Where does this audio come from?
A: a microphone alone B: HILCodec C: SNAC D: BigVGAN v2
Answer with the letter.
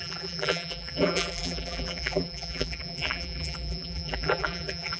D